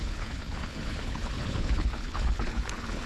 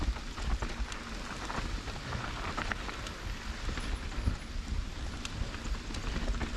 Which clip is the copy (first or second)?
first